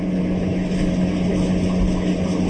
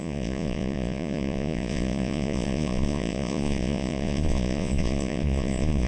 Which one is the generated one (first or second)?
second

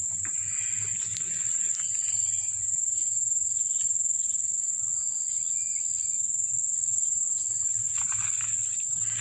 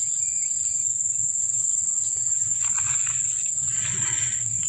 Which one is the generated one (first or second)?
second